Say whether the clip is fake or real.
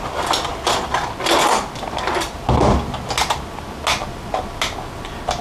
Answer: real